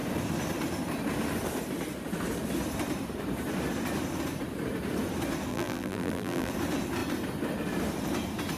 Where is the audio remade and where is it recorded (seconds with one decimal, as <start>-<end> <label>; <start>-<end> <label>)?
0.0-5.5 recorded; 5.5-6.5 remade; 6.5-8.6 recorded